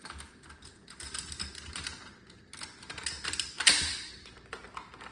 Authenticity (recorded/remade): recorded